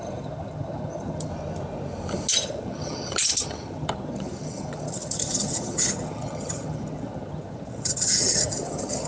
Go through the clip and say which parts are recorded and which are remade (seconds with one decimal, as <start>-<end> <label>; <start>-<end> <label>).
0.0-1.3 remade; 1.3-2.3 recorded; 2.3-9.1 remade

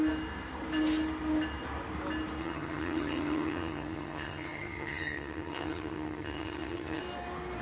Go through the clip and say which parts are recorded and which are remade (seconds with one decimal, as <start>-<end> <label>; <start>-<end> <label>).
0.0-2.4 recorded; 2.4-7.0 remade; 7.0-7.6 recorded